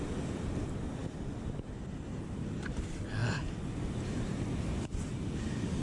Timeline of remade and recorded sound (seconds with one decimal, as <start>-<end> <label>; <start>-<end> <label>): 0.0-5.8 recorded